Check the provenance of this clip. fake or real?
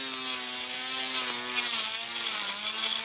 real